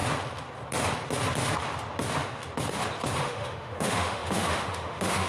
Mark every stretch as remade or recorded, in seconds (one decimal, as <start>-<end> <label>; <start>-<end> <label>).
0.0-3.2 recorded; 3.2-5.3 remade